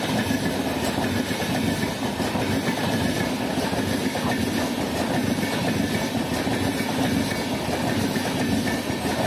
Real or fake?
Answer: real